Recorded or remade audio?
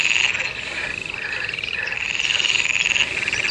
recorded